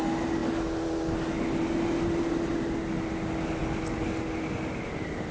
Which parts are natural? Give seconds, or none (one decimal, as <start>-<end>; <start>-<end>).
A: 0.0-5.3